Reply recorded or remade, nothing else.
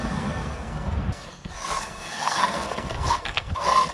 remade